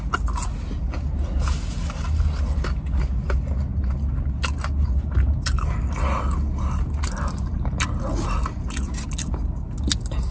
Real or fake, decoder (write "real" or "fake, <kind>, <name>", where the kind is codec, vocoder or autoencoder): real